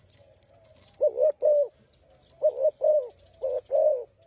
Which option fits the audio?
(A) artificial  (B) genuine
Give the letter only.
B